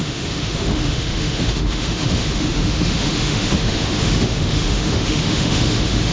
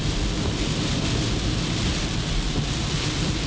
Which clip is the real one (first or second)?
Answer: second